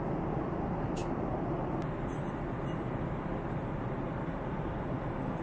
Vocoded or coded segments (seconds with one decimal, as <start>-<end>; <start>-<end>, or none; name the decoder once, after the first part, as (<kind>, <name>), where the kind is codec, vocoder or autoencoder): none